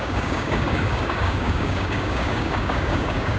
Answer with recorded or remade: remade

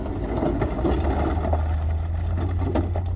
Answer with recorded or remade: recorded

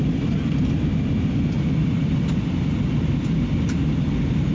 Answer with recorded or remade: recorded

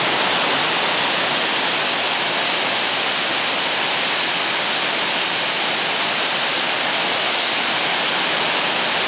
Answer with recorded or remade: recorded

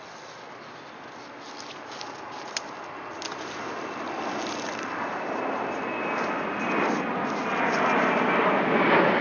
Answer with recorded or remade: recorded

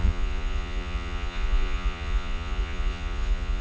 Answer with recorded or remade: remade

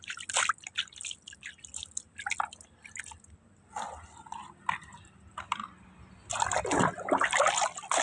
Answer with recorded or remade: recorded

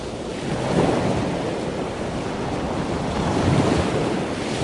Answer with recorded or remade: recorded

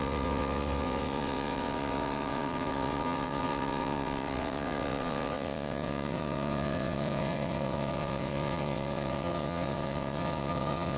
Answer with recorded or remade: remade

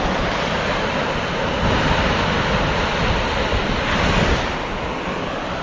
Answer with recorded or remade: recorded